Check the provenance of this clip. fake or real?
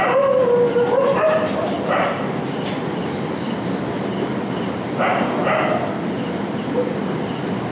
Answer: real